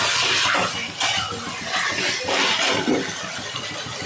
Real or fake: real